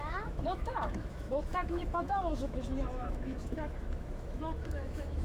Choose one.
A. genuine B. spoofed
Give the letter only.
B